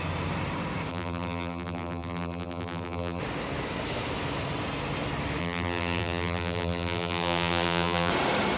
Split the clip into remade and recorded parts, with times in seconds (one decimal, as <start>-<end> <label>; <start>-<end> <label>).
0.0-0.9 recorded; 0.9-3.2 remade; 3.2-5.4 recorded; 5.4-8.1 remade; 8.1-8.6 recorded